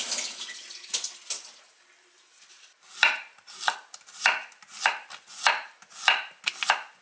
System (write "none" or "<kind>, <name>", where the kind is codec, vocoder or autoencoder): none